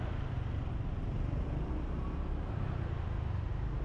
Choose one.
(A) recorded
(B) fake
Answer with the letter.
A